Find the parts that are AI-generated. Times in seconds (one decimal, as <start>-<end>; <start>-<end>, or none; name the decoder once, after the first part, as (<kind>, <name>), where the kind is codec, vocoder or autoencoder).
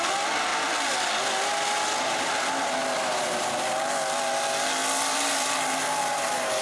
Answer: none